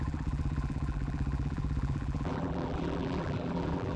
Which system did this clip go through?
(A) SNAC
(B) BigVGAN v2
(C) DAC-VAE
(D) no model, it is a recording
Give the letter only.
B